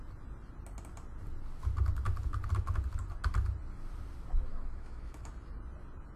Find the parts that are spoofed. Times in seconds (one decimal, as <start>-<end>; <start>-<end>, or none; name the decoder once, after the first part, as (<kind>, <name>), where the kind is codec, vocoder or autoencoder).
4.5-5.3 (autoencoder, DAC-VAE)